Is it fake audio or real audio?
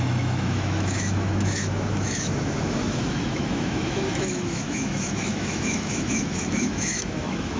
fake